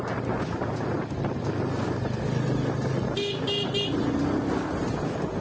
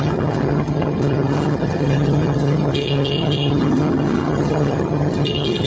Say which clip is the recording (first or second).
first